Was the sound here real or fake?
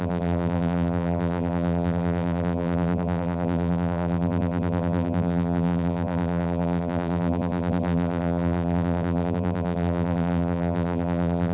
fake